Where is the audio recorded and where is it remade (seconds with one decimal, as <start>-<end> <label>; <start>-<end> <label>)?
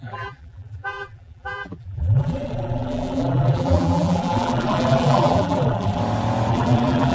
0.0-6.0 remade; 6.0-6.5 recorded; 6.5-7.1 remade